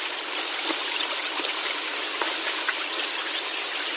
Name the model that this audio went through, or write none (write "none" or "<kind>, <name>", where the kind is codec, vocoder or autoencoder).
none